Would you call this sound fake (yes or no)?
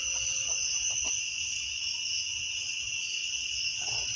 no